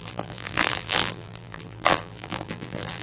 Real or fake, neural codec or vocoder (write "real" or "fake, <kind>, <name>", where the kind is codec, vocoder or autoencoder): fake, vocoder, BigVGAN v2